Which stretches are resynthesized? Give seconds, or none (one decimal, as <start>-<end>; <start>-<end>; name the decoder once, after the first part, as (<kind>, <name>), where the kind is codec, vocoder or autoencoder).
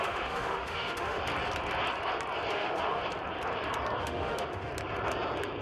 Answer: 0.0-1.2 (autoencoder, DAC-VAE); 2.5-3.0; 4.0-4.7